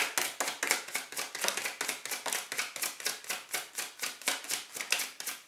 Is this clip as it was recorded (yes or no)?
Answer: yes